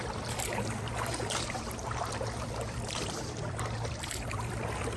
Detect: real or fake fake